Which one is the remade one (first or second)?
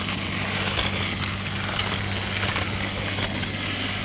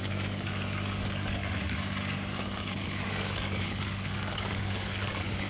second